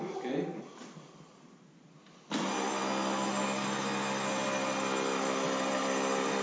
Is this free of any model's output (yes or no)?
yes